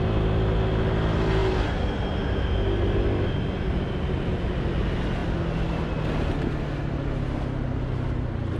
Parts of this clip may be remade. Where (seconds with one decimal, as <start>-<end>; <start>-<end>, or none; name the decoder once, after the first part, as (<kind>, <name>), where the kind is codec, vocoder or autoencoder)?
none